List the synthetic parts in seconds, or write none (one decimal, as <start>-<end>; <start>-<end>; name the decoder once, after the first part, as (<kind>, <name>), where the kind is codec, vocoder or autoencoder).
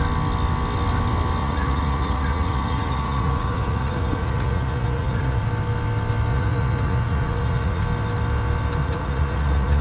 1.4-5.5 (vocoder, Vocos); 6.3-7.8; 8.8-9.8